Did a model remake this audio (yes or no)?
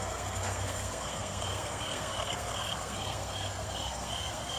yes